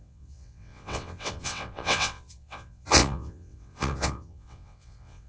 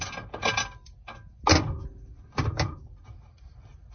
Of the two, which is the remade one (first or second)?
first